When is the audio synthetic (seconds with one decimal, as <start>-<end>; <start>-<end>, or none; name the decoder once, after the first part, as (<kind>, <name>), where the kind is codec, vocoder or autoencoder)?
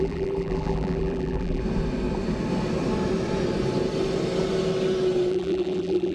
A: 0.0-1.6 (vocoder, BigVGAN v2); 5.3-6.1